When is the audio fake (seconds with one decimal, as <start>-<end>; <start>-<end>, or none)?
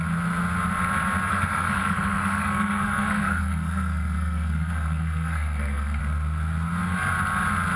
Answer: 1.3-6.0